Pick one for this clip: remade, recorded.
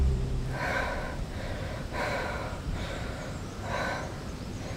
remade